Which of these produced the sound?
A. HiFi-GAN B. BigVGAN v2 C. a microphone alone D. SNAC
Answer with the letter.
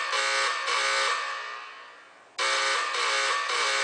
C